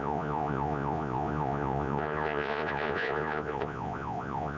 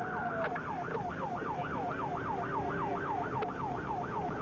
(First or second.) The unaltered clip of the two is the second